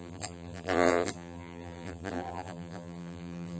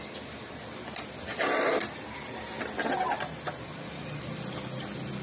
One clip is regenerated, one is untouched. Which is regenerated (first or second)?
first